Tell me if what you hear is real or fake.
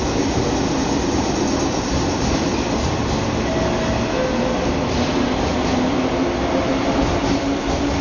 real